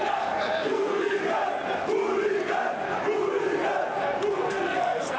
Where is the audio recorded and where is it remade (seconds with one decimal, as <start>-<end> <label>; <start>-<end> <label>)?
0.0-1.2 remade; 1.2-4.3 recorded; 4.3-5.2 remade